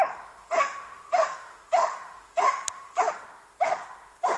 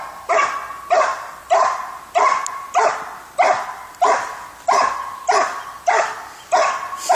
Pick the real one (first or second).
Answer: second